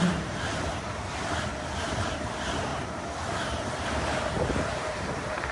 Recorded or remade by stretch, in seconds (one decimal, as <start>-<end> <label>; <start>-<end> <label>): 0.0-1.5 remade; 1.5-2.2 recorded; 2.2-2.7 remade; 2.7-4.3 recorded; 4.3-5.5 remade